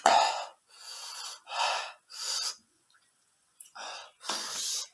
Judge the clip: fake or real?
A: fake